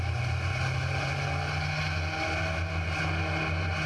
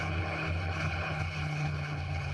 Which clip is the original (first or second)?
first